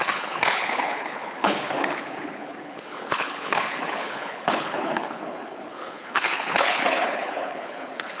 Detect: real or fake fake